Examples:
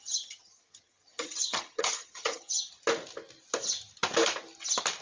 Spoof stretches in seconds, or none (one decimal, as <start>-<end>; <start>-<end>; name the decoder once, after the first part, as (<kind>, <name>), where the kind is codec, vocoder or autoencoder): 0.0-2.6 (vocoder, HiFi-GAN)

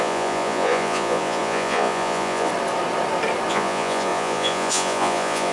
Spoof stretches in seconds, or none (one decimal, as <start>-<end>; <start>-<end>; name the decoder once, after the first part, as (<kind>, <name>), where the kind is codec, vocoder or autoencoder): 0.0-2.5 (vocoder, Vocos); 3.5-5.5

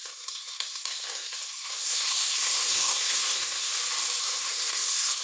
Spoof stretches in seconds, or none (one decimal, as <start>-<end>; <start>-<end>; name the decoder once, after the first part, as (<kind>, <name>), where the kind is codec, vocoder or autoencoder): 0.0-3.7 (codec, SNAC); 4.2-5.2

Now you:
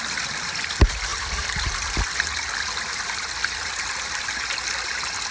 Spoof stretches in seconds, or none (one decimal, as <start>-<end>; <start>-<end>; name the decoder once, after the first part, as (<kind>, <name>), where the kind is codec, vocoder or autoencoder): none

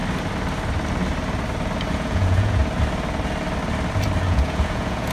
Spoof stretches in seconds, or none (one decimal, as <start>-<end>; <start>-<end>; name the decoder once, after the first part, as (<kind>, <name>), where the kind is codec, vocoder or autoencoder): 1.9-2.6 (vocoder, Vocos); 4.2-5.1

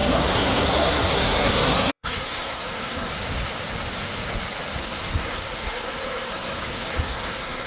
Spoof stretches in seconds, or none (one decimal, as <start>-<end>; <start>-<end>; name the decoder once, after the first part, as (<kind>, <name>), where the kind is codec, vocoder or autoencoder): 0.0-3.1 (codec, SNAC); 4.8-7.7

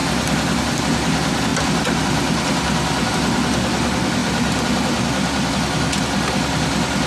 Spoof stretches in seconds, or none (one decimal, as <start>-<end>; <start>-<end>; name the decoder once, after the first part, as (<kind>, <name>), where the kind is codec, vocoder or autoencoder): none